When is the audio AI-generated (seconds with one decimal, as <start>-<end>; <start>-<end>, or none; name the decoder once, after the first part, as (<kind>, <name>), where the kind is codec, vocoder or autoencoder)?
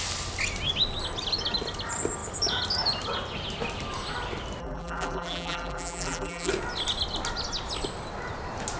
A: 4.6-6.5 (vocoder, BigVGAN v2)